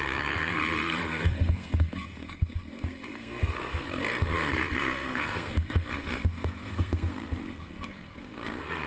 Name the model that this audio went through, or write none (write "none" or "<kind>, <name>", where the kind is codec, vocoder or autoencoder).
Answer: codec, SNAC